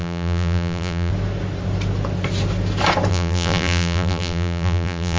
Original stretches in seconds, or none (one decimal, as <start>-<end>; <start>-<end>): 1.1-3.1